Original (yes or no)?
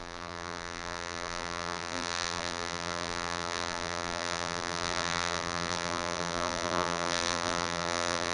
no